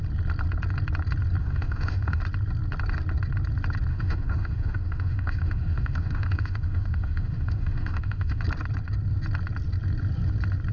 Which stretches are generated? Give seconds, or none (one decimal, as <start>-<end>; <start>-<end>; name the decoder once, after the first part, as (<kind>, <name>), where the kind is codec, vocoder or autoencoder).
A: 1.4-2.2 (autoencoder, DAC-VAE); 3.9-8.4